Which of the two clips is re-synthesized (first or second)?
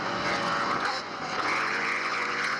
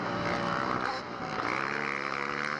first